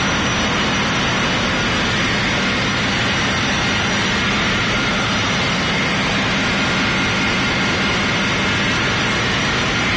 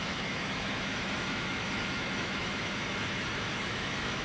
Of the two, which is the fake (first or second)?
second